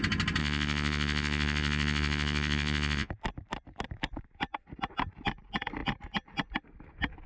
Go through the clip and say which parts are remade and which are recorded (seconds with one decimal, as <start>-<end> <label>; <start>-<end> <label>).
0.0-0.4 recorded; 0.4-3.1 remade; 3.1-7.3 recorded